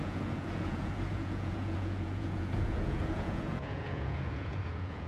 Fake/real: fake